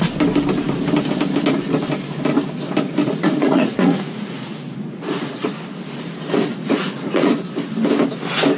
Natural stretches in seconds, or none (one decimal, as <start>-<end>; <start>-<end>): 0.0-3.0; 5.5-6.5; 7.3-8.6

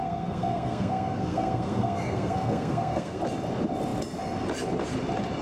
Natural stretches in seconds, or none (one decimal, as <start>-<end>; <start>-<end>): 3.2-5.4

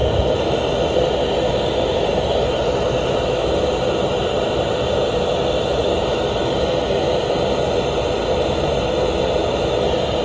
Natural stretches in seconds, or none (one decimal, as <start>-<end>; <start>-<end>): 0.0-10.2

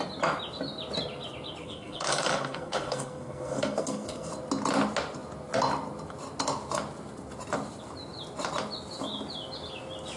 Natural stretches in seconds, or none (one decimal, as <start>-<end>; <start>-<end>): 0.0-1.6; 4.3-10.2